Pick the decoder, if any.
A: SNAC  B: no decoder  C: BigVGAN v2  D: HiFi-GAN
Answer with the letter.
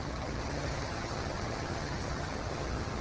D